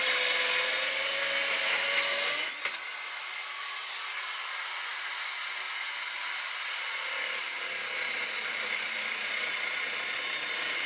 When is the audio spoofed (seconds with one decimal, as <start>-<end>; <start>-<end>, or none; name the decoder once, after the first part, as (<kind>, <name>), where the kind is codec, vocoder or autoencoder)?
6.2-10.9 (vocoder, BigVGAN v2)